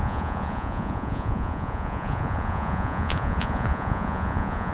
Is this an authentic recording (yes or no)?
no